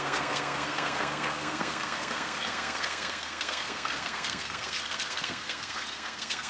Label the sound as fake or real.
fake